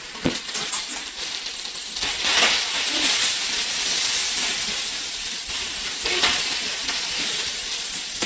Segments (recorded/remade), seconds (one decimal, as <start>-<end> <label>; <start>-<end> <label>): 0.0-0.9 remade; 0.9-2.6 recorded; 2.6-4.2 remade; 4.2-5.1 recorded; 5.1-5.7 remade; 5.7-6.2 recorded; 6.2-8.3 remade